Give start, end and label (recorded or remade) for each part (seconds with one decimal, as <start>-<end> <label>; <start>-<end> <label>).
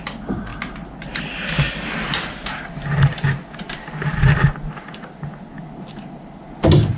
0.0-7.0 recorded